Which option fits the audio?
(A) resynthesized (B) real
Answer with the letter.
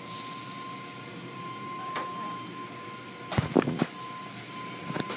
B